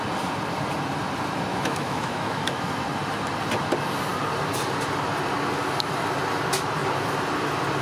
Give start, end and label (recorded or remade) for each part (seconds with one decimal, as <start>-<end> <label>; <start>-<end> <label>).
0.0-1.5 recorded; 1.5-2.7 remade; 2.7-7.8 recorded